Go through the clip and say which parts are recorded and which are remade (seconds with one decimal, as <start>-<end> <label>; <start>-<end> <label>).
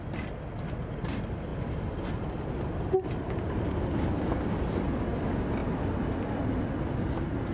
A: 0.0-7.5 recorded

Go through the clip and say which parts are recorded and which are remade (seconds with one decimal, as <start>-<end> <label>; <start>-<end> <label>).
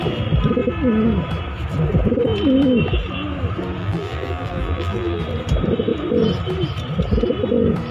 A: 0.0-3.8 recorded; 3.8-5.2 remade; 5.2-7.9 recorded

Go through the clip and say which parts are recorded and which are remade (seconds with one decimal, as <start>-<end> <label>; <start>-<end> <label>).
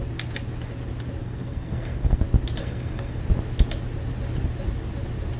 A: 0.0-1.2 recorded; 1.2-2.2 remade; 2.2-2.6 recorded; 2.6-3.2 remade; 3.2-5.4 recorded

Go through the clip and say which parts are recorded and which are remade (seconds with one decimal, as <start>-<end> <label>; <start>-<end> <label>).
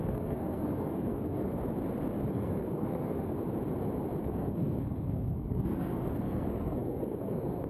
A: 0.0-1.6 remade; 1.6-2.3 recorded; 2.3-3.3 remade; 3.3-4.2 recorded; 4.2-7.7 remade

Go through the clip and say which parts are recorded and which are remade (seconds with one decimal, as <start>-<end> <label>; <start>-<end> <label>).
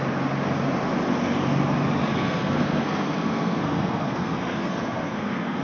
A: 0.0-2.1 recorded; 2.1-5.6 remade